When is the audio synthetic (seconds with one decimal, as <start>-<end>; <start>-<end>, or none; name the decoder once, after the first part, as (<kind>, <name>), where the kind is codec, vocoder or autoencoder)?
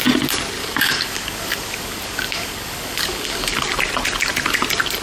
0.6-3.6 (codec, DAC)